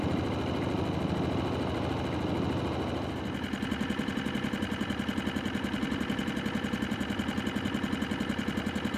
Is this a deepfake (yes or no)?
no